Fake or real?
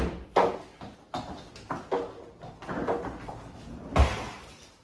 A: real